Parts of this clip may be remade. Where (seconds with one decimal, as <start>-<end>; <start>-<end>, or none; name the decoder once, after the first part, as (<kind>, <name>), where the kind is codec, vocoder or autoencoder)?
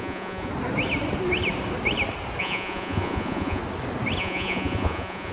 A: 0.0-0.5 (vocoder, Vocos); 2.4-3.6; 4.2-5.3